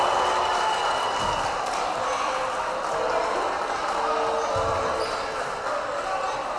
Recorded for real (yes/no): yes